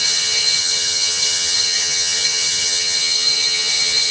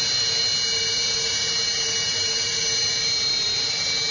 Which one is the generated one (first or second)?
first